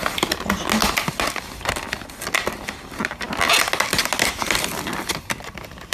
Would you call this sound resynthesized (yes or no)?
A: no